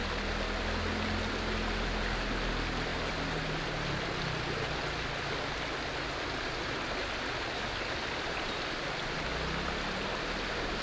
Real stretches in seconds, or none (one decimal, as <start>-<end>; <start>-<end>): 0.0-10.8